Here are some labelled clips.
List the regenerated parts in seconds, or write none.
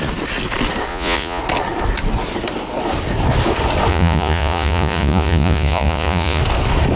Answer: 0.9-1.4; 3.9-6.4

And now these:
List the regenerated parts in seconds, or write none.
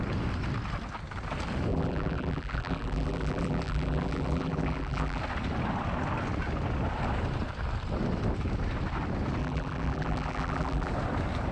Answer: 1.7-5.2; 9.4-10.9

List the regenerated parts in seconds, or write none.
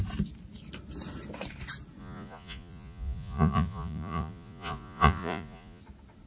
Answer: 2.0-5.8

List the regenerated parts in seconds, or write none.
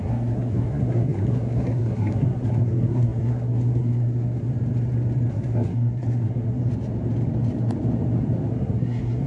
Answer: 0.0-4.5; 5.3-6.6; 8.5-9.3